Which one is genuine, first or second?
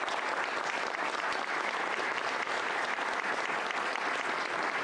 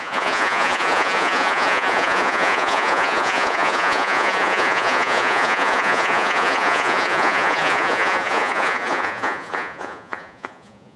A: first